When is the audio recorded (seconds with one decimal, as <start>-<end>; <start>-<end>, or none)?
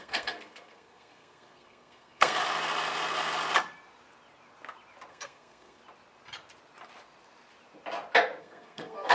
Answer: 2.4-5.1; 5.8-8.4